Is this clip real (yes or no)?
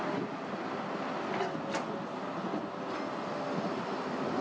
yes